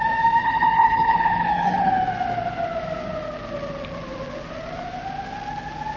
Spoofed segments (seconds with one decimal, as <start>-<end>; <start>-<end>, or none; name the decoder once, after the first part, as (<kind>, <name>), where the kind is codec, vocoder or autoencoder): 0.4-1.9 (codec, HILCodec)